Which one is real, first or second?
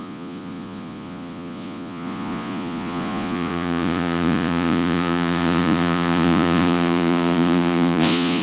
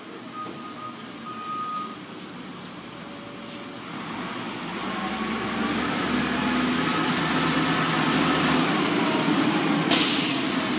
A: second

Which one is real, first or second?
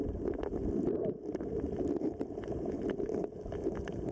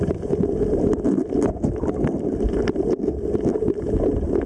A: second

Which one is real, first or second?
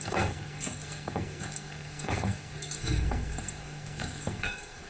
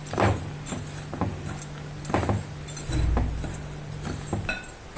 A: second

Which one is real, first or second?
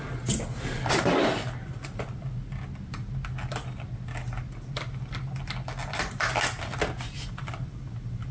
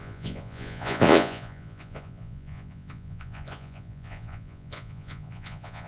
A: first